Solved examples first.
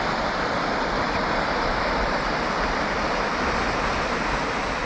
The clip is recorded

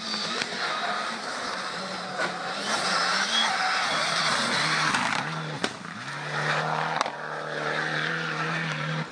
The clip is remade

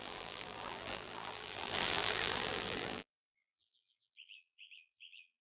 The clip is remade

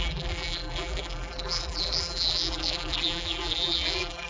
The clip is remade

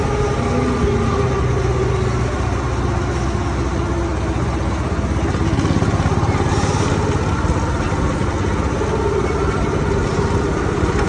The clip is recorded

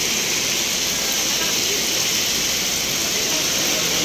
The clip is recorded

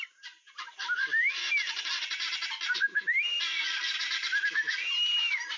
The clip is remade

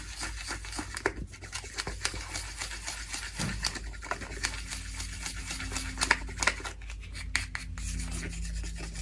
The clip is recorded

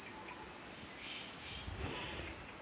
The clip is recorded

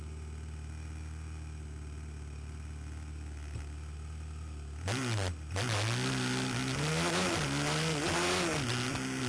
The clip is recorded